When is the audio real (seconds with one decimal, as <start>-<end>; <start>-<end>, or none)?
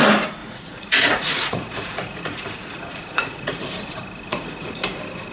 0.0-0.4; 3.6-4.3; 4.8-5.3